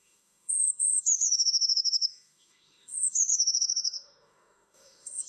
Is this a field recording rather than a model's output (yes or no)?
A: no